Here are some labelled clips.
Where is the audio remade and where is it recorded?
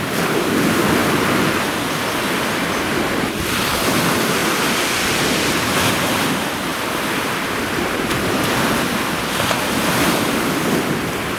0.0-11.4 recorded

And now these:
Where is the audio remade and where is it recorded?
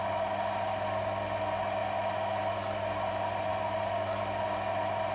0.0-5.1 recorded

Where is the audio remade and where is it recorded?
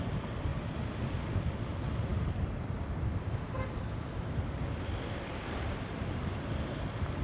0.0-7.2 recorded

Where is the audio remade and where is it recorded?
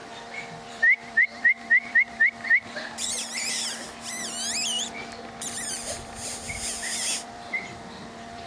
0.0-8.5 remade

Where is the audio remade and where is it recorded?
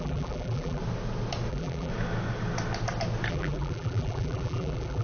0.0-0.8 remade; 0.8-1.5 recorded; 1.5-1.9 remade; 1.9-3.3 recorded; 3.3-5.0 remade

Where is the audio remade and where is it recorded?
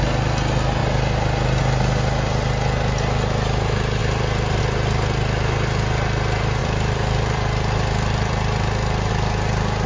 0.0-4.0 recorded; 4.0-4.6 remade; 4.6-6.6 recorded; 6.6-9.1 remade; 9.1-9.9 recorded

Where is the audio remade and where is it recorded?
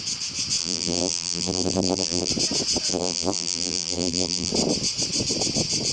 0.0-0.6 recorded; 0.6-2.3 remade; 2.3-2.9 recorded; 2.9-4.5 remade; 4.5-5.9 recorded